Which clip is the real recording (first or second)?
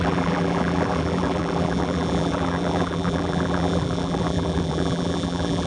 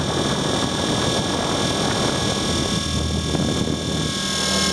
second